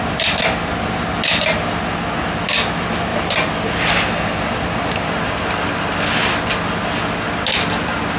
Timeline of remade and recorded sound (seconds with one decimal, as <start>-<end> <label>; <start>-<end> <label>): 0.0-8.2 recorded